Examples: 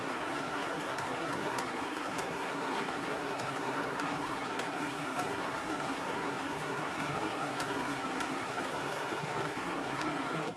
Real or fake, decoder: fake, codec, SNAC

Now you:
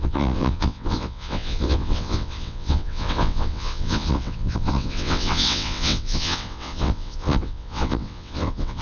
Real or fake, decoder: fake, vocoder, WaveNeXt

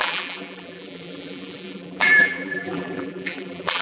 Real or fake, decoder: fake, vocoder, BigVGAN v2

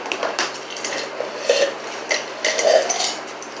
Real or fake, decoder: real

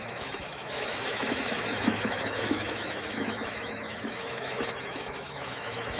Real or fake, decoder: fake, autoencoder, DAC-VAE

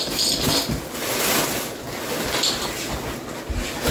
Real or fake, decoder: real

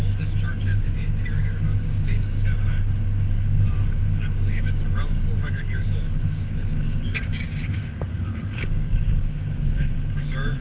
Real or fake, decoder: fake, codec, DAC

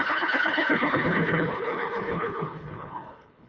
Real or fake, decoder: fake, codec, HILCodec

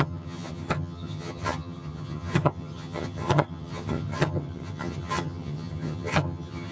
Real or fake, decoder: fake, vocoder, HiFi-GAN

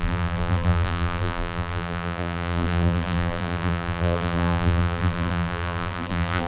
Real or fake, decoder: fake, vocoder, BigVGAN v2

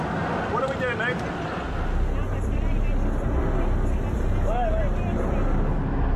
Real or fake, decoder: real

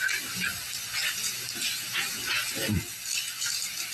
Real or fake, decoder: real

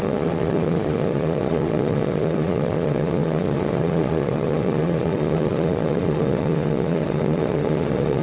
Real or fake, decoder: fake, vocoder, Vocos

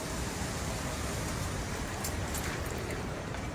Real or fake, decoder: fake, vocoder, BigVGAN v2